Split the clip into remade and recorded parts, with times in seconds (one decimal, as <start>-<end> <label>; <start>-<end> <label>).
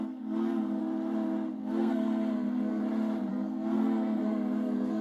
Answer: 0.0-0.8 remade; 0.8-1.6 recorded; 1.6-2.8 remade; 2.8-3.3 recorded; 3.3-5.0 remade